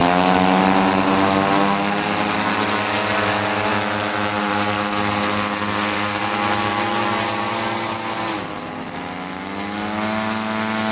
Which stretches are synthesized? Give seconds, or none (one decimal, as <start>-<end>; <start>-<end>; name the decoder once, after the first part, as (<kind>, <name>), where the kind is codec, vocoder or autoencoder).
0.0-0.6 (autoencoder, DAC-VAE); 3.7-4.5